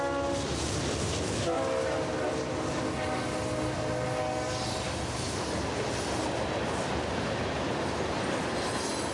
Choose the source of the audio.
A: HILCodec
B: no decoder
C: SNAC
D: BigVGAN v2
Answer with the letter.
B